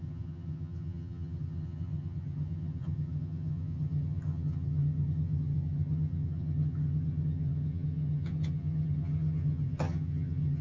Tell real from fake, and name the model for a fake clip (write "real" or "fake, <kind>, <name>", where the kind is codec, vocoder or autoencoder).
fake, vocoder, HiFi-GAN